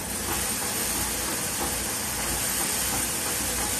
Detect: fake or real real